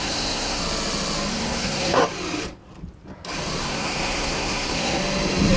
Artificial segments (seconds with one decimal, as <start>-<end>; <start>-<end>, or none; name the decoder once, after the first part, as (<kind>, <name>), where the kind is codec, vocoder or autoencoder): 0.0-0.6 (codec, SNAC); 1.3-2.0; 3.6-5.0